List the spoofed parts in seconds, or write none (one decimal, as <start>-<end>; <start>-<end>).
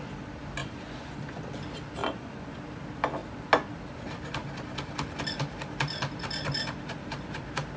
0.6-1.4; 2.0-2.6